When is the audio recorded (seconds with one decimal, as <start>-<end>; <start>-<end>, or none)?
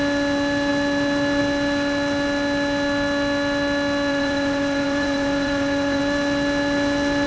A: 0.0-4.1; 6.0-7.3